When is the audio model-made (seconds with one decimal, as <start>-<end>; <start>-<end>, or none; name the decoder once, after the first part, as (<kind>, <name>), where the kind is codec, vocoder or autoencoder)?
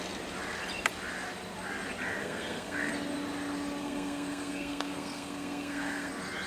2.2-2.9 (codec, SNAC); 3.8-6.1